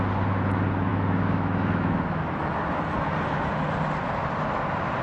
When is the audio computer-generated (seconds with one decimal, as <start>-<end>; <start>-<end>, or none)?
0.9-2.4